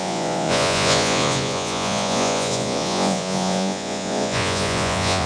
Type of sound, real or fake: fake